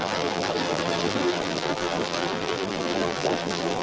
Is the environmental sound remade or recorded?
remade